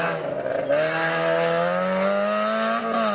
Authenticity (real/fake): real